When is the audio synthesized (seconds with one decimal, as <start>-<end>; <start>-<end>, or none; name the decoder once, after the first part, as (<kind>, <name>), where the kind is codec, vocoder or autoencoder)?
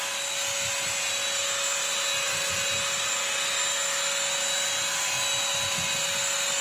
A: none